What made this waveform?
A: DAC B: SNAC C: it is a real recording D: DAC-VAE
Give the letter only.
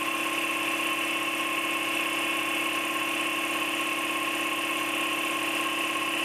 C